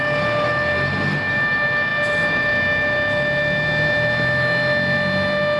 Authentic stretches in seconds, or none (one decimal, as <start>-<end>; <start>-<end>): 0.0-5.6